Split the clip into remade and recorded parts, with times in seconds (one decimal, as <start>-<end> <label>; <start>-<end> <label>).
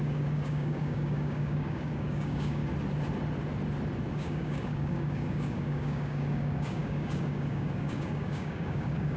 0.0-2.6 remade; 2.6-4.1 recorded; 4.1-9.2 remade